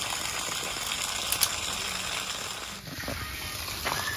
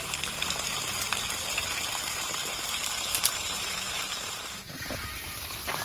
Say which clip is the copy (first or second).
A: second